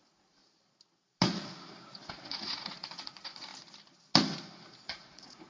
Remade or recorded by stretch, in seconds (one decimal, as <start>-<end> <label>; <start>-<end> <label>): 0.0-0.4 remade; 0.4-2.1 recorded; 2.1-3.5 remade; 3.5-4.9 recorded; 4.9-5.5 remade